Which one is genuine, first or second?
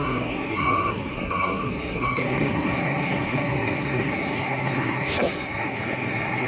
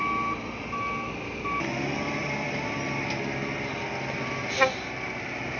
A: second